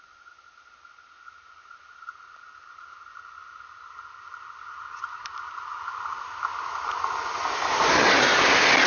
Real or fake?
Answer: real